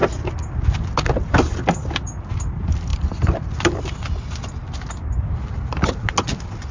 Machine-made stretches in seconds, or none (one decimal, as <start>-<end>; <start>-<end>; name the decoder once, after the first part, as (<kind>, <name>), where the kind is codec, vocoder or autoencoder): 2.9-3.9 (vocoder, BigVGAN v2)

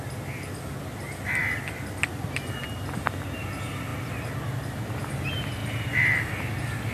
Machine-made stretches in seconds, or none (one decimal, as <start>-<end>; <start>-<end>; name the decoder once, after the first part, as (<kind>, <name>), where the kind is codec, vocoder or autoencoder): none

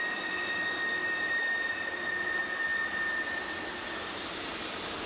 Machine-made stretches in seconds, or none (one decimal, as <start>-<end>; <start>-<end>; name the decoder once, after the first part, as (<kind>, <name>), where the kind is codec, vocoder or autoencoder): 1.0-1.5 (vocoder, BigVGAN v2)